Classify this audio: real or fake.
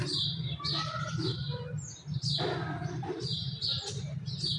real